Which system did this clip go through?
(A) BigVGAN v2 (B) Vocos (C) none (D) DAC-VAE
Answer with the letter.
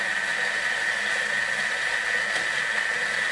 C